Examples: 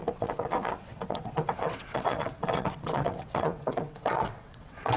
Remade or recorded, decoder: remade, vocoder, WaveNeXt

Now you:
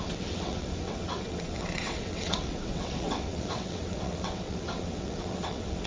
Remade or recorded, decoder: remade, vocoder, WaveNeXt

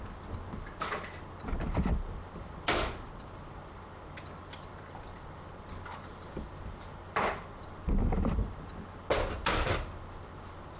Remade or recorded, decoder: recorded